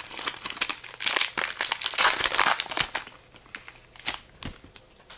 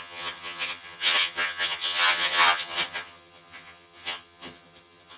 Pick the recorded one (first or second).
first